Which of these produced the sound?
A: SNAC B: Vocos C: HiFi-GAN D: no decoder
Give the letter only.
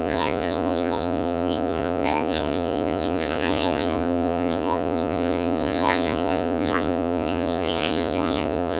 B